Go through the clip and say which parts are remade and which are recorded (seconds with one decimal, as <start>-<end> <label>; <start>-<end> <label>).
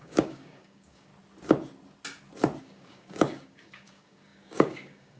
0.0-1.1 remade; 1.1-2.6 recorded; 2.6-5.2 remade